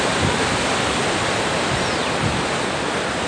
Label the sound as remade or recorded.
recorded